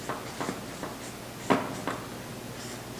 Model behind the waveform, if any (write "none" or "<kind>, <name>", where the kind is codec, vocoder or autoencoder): none